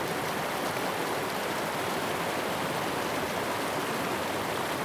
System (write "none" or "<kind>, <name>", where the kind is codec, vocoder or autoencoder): none